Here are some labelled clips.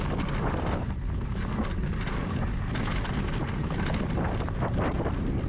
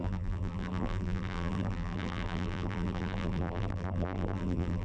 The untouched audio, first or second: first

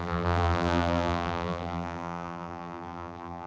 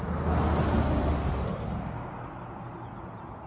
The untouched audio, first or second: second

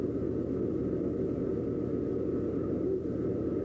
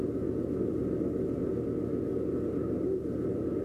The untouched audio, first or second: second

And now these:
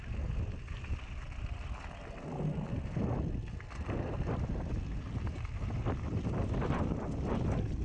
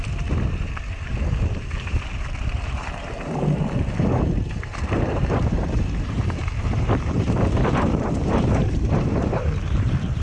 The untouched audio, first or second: first